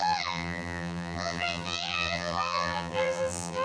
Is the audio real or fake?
fake